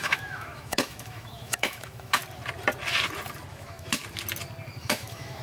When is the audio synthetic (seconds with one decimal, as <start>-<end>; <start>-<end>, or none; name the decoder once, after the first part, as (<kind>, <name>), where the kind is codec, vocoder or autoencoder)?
0.0-2.2 (autoencoder, DAC-VAE); 3.5-4.0; 4.8-5.4